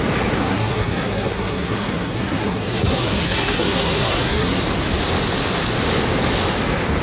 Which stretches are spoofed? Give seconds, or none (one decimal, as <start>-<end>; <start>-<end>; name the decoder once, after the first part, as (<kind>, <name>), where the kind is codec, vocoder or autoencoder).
0.4-4.6 (codec, SNAC)